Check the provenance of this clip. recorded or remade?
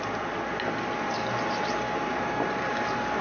recorded